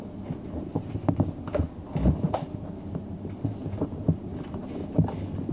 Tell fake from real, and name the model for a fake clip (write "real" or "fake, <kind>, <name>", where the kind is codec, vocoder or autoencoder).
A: real